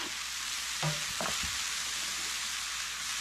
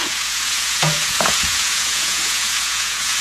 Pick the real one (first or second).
first